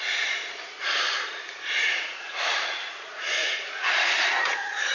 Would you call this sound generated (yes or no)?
yes